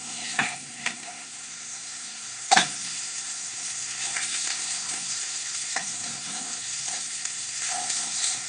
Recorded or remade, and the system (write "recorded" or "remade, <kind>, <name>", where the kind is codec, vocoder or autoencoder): remade, codec, SNAC